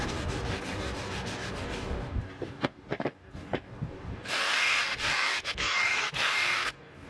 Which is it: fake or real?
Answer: fake